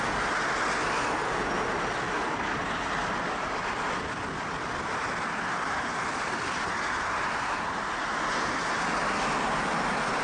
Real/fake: real